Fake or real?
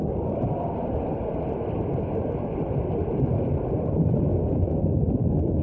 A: real